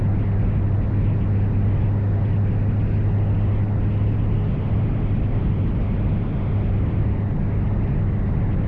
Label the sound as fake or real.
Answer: real